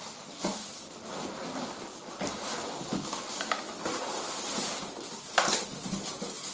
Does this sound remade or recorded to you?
recorded